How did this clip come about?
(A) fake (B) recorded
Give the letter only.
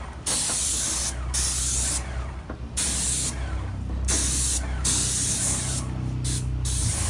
B